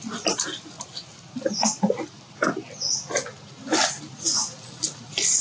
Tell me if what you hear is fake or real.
real